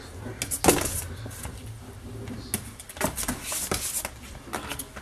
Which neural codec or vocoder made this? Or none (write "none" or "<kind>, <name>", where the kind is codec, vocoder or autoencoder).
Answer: none